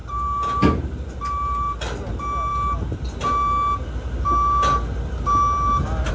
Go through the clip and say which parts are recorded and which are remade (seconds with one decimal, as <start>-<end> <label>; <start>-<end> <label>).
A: 0.0-2.1 remade; 2.1-6.1 recorded